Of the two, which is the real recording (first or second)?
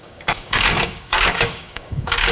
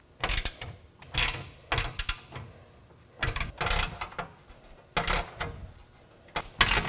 second